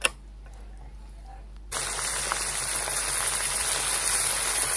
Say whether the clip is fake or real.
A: real